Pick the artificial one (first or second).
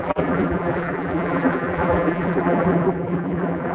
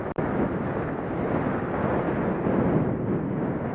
first